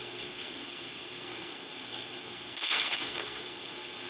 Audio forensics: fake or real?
fake